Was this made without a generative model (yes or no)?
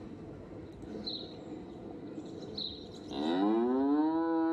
yes